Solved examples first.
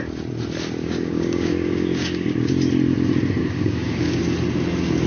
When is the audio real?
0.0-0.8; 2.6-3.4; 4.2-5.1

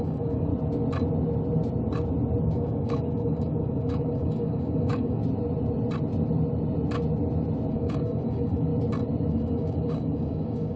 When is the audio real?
0.5-2.4; 5.2-7.7; 8.7-9.3

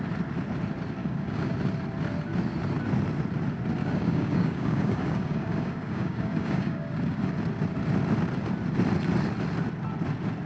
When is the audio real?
0.0-1.0; 1.5-3.8; 7.3-10.5

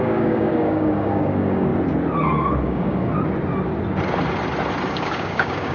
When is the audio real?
1.7-2.6; 3.1-4.9

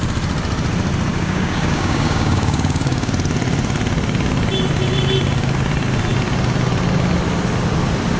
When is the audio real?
0.0-1.1; 3.1-8.2